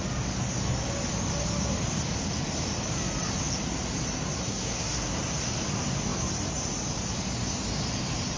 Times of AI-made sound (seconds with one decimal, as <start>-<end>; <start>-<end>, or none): 4.4-5.2